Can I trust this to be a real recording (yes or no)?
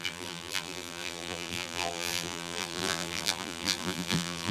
no